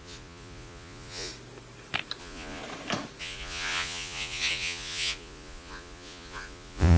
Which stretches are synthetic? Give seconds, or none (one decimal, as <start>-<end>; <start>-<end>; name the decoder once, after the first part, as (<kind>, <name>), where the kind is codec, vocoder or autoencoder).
0.0-1.3 (vocoder, Vocos); 2.2-2.6; 3.2-7.0